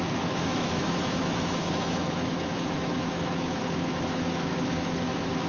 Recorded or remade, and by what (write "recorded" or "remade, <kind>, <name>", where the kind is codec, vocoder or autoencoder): remade, autoencoder, DAC-VAE